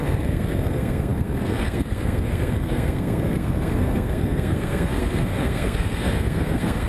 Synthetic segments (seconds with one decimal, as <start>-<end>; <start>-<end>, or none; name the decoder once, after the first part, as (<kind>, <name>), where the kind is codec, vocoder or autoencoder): 0.0-6.9 (codec, SNAC)